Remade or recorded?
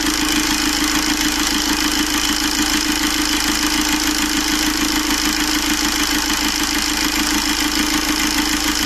recorded